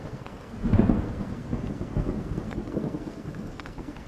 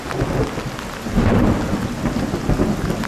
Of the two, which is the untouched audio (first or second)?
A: second